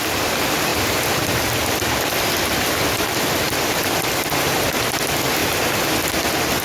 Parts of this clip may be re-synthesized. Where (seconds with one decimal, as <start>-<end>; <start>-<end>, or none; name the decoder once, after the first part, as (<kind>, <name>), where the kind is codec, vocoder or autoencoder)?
5.4-6.0 (vocoder, BigVGAN v2)